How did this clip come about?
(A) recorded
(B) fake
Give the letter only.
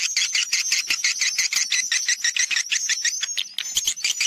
A